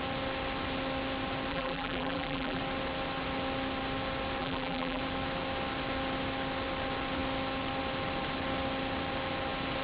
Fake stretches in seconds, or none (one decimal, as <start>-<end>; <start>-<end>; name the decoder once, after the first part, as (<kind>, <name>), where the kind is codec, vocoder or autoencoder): 1.5-2.6 (vocoder, BigVGAN v2); 4.4-5.0